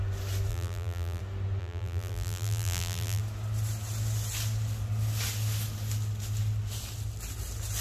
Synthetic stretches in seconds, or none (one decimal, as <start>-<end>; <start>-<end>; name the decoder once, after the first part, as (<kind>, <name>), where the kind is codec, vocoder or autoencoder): 0.5-1.2 (vocoder, BigVGAN v2); 1.6-3.2